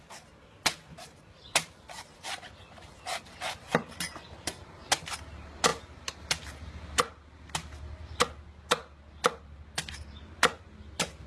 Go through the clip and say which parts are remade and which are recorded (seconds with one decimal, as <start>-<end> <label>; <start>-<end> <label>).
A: 0.0-11.3 recorded